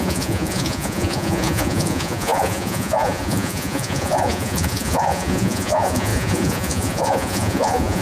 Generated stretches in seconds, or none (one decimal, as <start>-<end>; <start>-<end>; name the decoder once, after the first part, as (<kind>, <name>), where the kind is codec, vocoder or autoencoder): 0.0-8.0 (vocoder, Vocos)